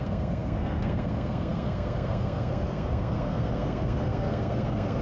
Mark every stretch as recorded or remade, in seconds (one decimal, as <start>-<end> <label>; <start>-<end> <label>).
0.0-5.0 remade